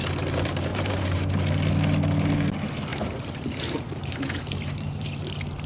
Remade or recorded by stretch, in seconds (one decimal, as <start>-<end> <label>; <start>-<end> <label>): 0.0-0.7 recorded; 0.7-1.3 remade; 1.3-2.9 recorded; 2.9-5.2 remade; 5.2-5.7 recorded